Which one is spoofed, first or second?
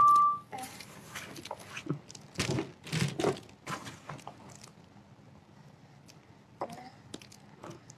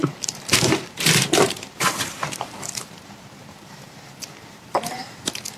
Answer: second